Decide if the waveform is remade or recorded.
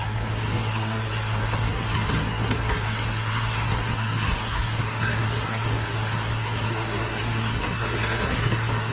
remade